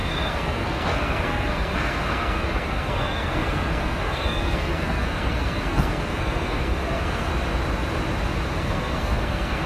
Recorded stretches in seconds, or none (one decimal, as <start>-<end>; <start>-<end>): 7.3-8.6